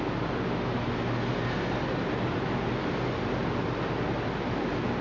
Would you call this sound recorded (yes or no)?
yes